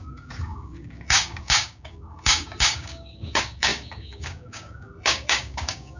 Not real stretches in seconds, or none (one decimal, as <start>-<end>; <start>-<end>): 0.0-6.0